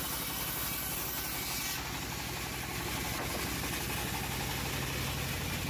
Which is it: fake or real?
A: real